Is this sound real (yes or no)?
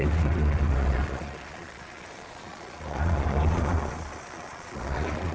no